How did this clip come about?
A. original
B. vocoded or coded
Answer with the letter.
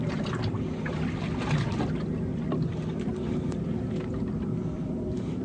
A